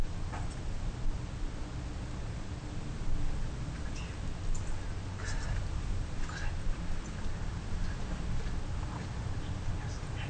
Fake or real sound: real